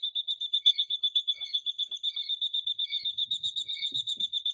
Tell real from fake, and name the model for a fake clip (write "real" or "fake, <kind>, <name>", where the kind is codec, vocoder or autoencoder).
fake, codec, HILCodec